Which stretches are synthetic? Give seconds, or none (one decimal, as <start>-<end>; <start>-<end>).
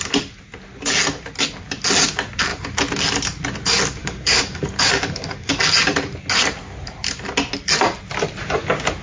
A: 4.0-5.5